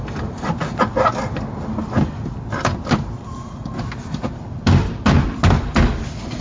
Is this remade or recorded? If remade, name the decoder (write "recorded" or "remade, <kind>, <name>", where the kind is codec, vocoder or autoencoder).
recorded